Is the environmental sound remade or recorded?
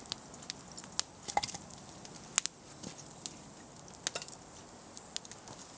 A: recorded